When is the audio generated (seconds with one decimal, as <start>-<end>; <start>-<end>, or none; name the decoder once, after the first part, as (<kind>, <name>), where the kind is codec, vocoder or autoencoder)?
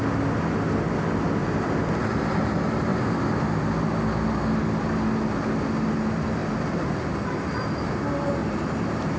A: 1.4-1.9 (vocoder, BigVGAN v2); 2.9-3.4; 6.4-7.9; 8.4-9.2